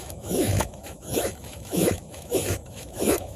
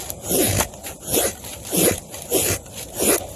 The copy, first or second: first